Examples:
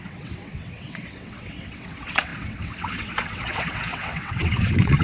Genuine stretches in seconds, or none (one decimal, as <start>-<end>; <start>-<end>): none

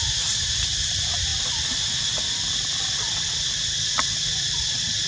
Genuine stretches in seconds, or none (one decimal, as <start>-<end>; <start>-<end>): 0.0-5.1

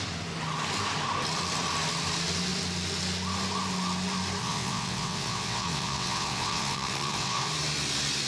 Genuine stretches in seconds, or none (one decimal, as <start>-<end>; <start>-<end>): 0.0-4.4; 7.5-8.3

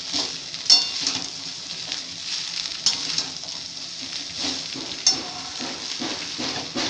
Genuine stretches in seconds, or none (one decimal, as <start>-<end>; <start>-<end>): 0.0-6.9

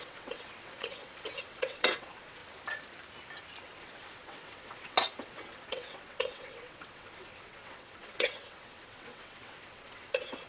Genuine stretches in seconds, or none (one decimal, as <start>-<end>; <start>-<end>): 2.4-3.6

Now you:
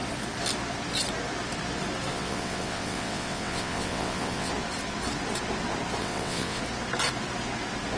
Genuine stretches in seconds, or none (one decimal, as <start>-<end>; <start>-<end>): 0.0-2.1; 4.5-6.0; 6.6-8.0